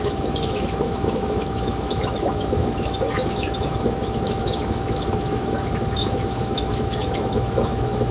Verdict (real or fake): fake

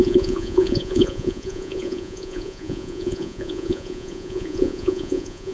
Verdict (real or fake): fake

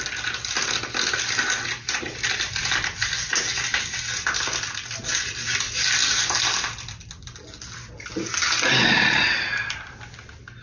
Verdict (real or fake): real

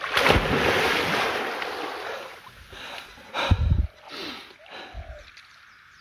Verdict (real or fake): real